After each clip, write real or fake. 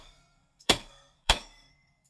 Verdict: fake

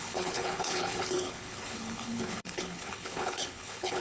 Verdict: fake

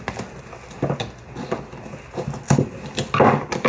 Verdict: real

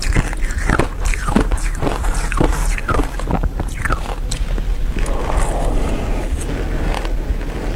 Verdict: real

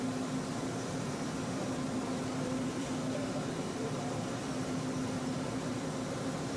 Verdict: fake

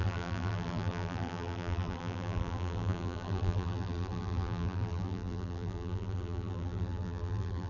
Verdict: fake